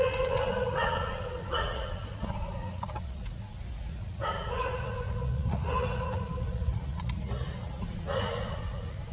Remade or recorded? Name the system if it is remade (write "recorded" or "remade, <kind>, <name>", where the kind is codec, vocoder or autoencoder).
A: remade, vocoder, Vocos